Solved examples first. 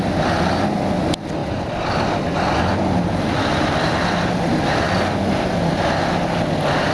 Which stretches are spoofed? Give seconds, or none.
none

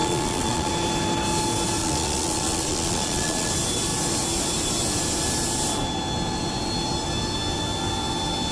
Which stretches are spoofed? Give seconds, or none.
0.0-0.7 (vocoder, Vocos); 1.8-3.5

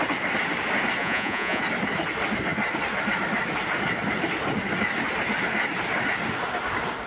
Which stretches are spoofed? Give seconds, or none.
1.0-1.6 (vocoder, Vocos)

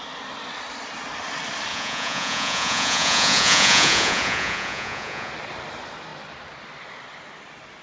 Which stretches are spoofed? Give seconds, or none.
1.7-5.3 (vocoder, Vocos)

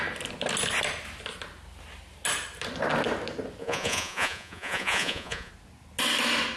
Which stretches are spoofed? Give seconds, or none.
3.6-5.5 (vocoder, Vocos)